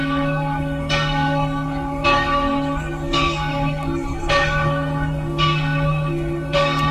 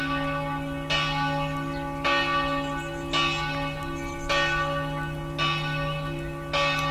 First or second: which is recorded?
second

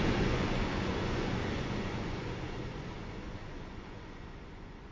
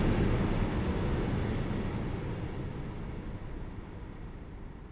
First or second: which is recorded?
second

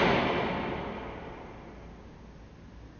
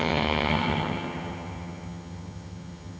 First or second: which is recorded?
first